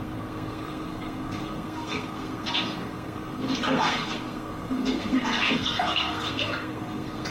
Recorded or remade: remade